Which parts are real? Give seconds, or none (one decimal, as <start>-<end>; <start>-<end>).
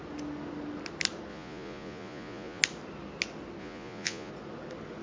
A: 0.0-1.3; 2.6-3.6; 4.3-5.0